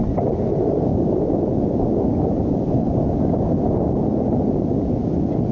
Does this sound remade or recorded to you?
recorded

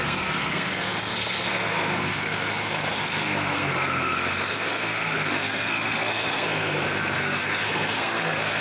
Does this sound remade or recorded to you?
remade